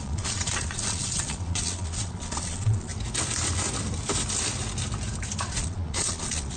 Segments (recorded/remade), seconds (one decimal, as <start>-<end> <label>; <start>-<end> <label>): 0.0-2.9 remade; 2.9-5.5 recorded; 5.5-6.6 remade